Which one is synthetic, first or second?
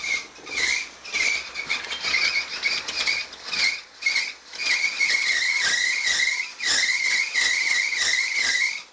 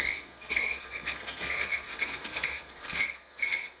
second